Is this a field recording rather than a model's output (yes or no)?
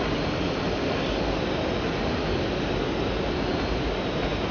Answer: yes